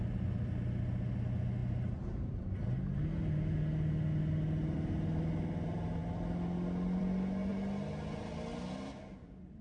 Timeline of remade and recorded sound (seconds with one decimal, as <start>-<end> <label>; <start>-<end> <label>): 0.0-9.6 recorded